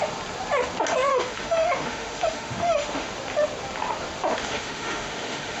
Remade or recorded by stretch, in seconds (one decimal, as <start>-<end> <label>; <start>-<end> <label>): 0.0-1.1 recorded; 1.1-3.1 remade; 3.1-4.4 recorded; 4.4-5.6 remade